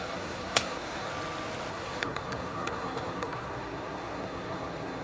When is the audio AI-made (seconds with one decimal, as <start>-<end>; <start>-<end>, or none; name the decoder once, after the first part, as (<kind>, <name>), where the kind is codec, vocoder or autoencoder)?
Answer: 0.0-1.1 (codec, SNAC); 1.7-5.0